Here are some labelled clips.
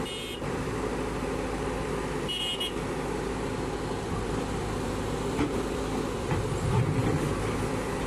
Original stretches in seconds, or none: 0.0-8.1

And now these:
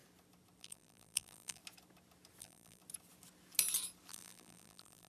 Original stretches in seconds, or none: 0.0-0.6; 1.6-2.4; 2.8-4.1

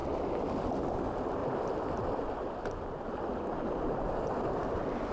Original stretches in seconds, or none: 0.0-1.4; 4.5-5.1

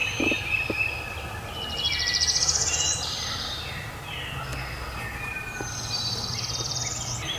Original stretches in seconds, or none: 0.0-1.1; 4.5-6.3

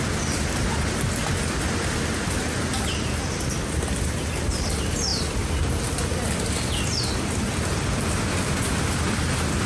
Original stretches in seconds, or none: 0.0-9.7

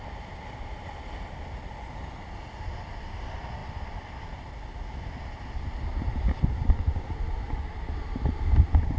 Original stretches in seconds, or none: 0.0-9.0

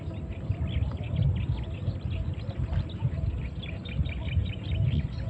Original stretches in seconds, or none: 0.0-5.3

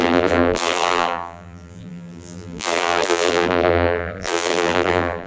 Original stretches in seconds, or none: none